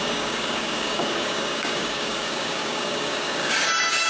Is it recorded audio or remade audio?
remade